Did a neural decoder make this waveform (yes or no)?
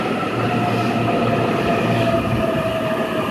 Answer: no